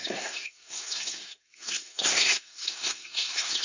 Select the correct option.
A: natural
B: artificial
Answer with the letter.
B